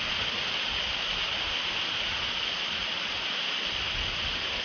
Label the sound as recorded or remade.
recorded